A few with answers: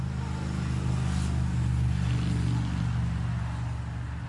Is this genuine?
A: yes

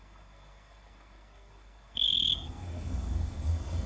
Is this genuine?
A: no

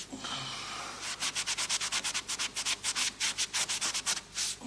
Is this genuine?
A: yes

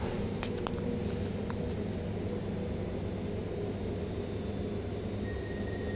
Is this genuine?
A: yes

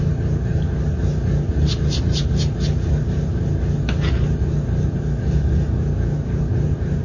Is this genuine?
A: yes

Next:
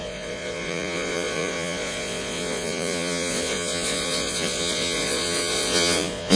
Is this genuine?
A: no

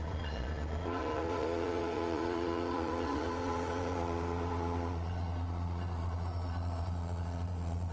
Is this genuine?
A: no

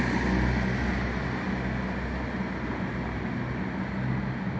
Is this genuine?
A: yes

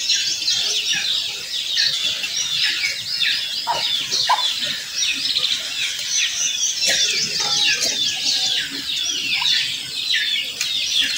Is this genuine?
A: yes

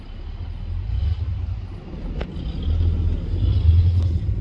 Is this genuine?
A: yes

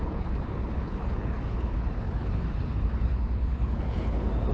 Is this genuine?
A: no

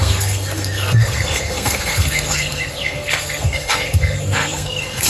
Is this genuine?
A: no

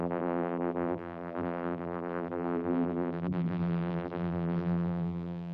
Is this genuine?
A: no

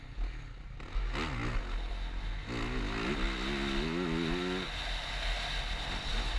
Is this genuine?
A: yes